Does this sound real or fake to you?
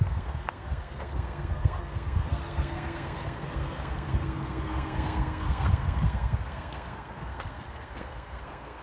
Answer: fake